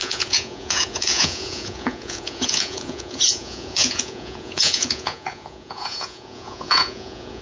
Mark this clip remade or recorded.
remade